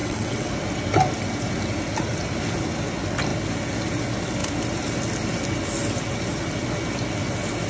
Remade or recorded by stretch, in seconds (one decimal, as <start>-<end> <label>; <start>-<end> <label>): 0.0-0.5 remade; 0.5-7.7 recorded